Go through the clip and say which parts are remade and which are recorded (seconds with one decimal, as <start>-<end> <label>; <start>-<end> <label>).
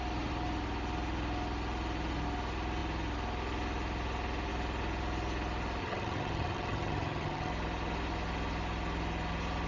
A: 0.0-5.8 recorded; 5.8-7.5 remade; 7.5-9.7 recorded